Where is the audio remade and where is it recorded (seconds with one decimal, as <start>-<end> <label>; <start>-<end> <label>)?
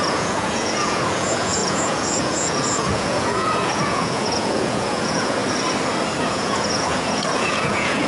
0.0-5.4 remade; 5.4-6.2 recorded; 6.2-8.1 remade